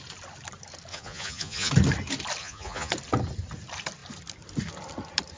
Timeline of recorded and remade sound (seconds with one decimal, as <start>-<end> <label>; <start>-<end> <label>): 0.0-0.9 recorded; 0.9-1.7 remade; 1.7-2.4 recorded; 2.4-2.9 remade; 2.9-5.4 recorded